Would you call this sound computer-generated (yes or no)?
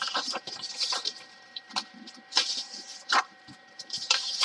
yes